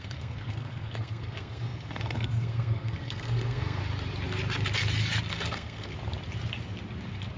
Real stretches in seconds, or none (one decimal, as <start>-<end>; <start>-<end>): 3.8-5.3; 5.9-7.4